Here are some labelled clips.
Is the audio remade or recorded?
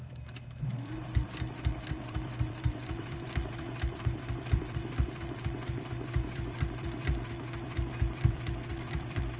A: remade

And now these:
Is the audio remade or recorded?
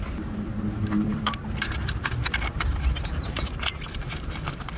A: remade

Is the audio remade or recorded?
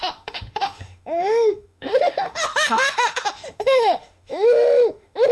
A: remade